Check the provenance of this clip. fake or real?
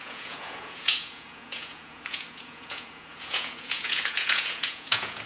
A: fake